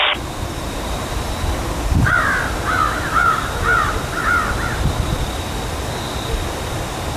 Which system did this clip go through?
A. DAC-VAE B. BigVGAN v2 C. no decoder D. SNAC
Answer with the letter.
C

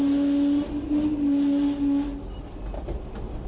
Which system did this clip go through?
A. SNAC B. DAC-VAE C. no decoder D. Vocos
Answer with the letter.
C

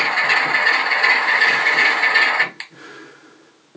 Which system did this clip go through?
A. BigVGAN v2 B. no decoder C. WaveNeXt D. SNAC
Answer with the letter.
B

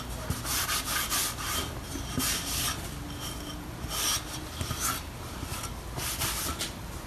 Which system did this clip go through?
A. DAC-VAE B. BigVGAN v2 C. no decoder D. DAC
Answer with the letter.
C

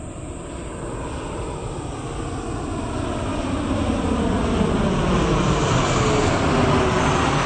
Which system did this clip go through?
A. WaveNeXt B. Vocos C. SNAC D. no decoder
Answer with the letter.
D